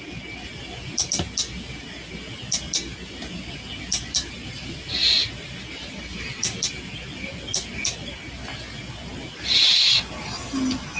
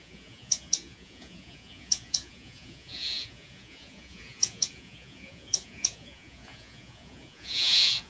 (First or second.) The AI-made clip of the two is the second